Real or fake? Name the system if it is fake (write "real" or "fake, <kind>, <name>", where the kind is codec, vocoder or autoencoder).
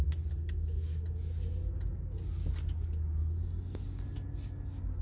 real